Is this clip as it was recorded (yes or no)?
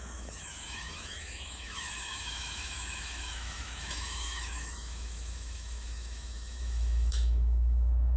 no